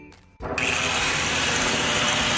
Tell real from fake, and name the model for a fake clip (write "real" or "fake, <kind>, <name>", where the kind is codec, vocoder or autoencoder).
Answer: real